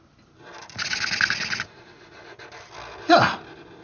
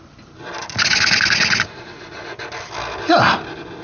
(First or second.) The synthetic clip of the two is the second